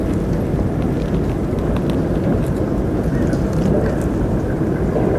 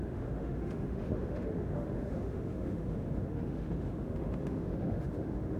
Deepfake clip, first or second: second